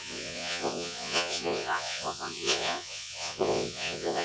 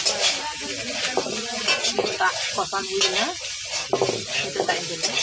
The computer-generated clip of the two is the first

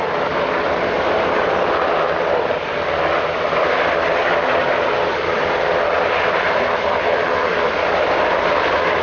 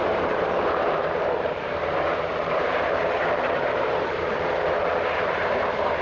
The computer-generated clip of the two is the second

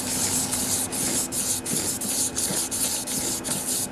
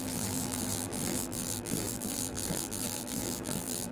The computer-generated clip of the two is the second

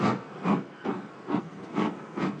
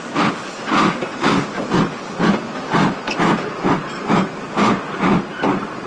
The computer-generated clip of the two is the first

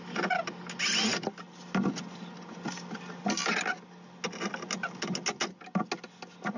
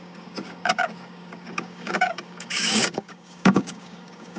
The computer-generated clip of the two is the second